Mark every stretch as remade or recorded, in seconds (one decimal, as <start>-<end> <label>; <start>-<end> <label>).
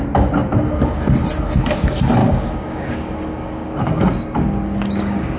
0.0-2.2 recorded; 2.2-5.4 remade